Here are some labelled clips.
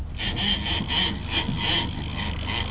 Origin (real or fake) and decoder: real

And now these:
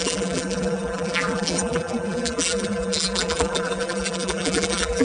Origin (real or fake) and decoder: fake, vocoder, BigVGAN v2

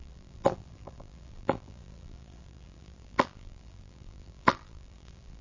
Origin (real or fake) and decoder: fake, vocoder, BigVGAN v2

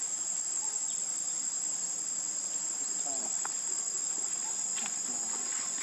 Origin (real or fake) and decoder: real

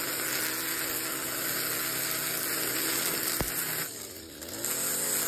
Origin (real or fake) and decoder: real